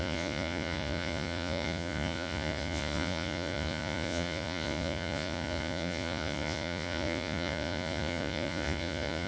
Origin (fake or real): fake